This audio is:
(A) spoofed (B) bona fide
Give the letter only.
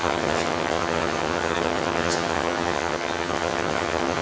A